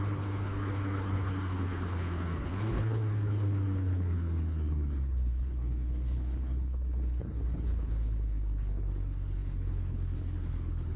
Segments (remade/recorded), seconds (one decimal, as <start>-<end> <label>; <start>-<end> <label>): 0.0-11.0 remade